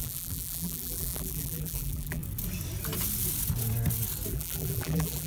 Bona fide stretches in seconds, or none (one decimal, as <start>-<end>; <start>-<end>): 2.2-4.3